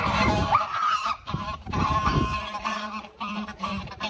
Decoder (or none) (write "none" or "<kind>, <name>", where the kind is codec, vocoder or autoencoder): vocoder, BigVGAN v2